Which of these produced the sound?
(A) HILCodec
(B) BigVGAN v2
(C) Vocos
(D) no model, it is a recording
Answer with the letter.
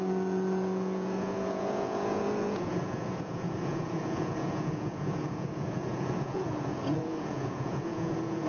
C